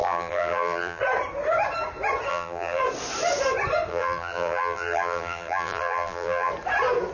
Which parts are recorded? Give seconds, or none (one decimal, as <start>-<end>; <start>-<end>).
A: 1.0-2.3; 2.8-3.9; 6.5-7.1